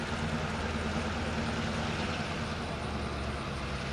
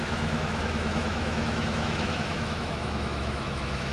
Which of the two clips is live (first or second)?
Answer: first